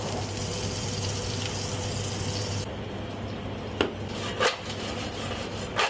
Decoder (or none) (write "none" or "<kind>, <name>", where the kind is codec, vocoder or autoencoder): none